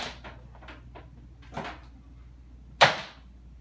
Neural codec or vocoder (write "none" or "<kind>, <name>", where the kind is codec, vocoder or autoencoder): none